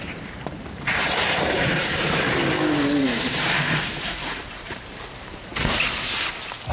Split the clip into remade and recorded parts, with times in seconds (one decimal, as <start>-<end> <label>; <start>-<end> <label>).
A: 0.0-2.4 remade; 2.4-3.0 recorded; 3.0-5.5 remade; 5.5-6.7 recorded